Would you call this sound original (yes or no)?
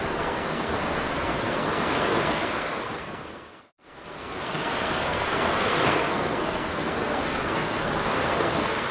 no